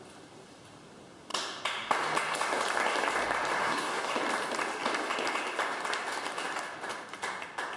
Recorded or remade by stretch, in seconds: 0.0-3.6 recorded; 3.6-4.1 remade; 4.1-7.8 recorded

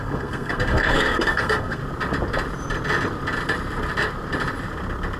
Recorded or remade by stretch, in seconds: 0.0-1.8 remade; 1.8-5.2 recorded

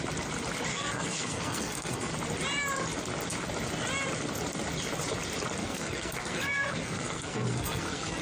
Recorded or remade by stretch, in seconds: 0.0-0.7 recorded; 0.7-2.1 remade; 2.1-5.6 recorded; 5.6-8.2 remade